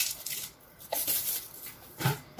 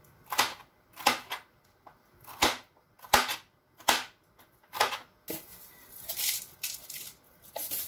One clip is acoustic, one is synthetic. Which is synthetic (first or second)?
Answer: first